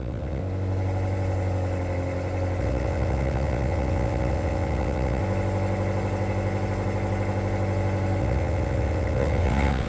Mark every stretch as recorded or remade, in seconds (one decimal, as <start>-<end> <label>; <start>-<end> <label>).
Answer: 0.0-0.4 remade; 0.4-2.6 recorded; 2.6-5.2 remade; 5.2-8.2 recorded; 8.2-9.9 remade